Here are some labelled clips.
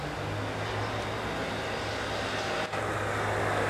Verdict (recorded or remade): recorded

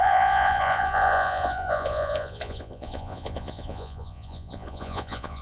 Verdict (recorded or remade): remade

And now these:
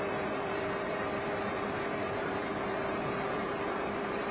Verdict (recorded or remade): remade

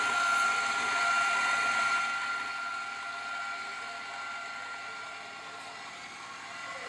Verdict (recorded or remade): recorded